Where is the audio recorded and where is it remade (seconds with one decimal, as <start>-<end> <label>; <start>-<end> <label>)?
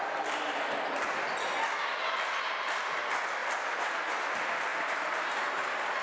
0.0-3.4 recorded; 3.4-4.1 remade; 4.1-4.7 recorded; 4.7-5.6 remade; 5.6-6.0 recorded